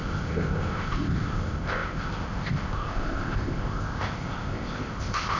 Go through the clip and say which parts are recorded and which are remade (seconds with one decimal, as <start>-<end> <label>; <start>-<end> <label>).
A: 0.0-5.4 remade